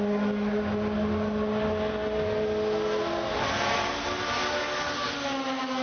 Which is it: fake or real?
real